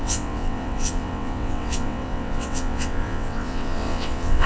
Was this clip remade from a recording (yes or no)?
yes